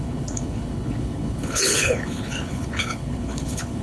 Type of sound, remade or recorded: remade